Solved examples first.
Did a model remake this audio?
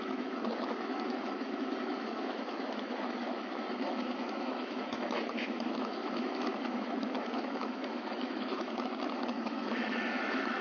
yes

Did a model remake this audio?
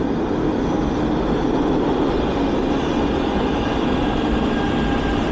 no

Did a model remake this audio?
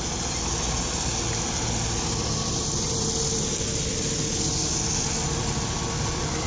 no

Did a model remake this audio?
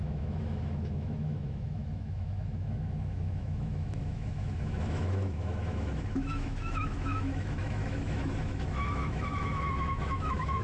yes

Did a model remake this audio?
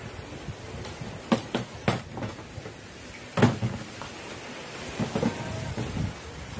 no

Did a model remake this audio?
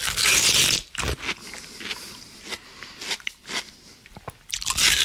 no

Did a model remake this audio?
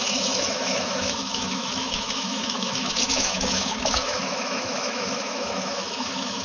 yes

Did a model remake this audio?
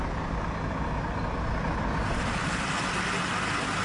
no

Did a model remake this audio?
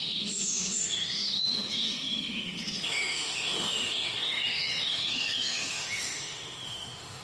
yes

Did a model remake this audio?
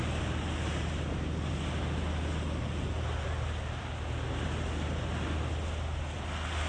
no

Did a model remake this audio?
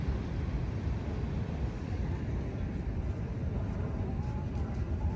no